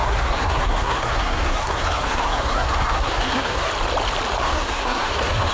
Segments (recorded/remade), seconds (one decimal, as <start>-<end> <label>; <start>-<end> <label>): 0.0-3.7 remade; 3.7-4.4 recorded; 4.4-5.5 remade